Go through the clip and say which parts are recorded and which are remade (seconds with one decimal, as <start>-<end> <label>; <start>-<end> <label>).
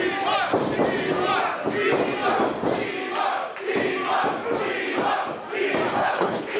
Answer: 0.0-6.0 recorded; 6.0-6.6 remade